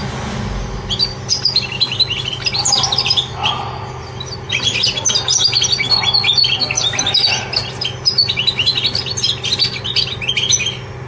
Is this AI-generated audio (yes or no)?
no